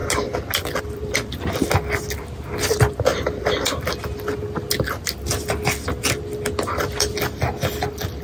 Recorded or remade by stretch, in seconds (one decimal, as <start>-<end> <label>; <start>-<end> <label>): 0.0-8.2 recorded